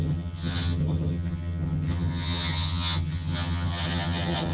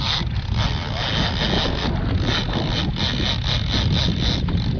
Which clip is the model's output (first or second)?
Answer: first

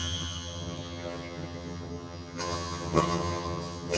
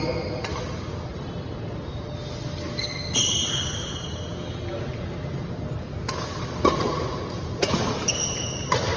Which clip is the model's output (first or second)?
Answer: first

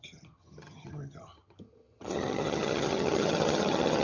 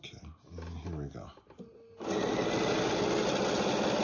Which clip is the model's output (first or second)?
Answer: first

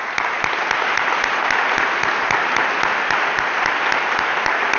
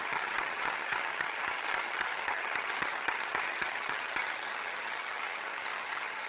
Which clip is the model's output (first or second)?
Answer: second